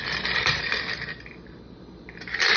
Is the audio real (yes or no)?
no